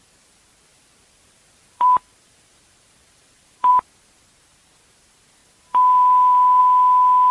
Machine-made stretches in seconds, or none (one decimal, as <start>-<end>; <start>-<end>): 0.7-3.7; 5.4-6.6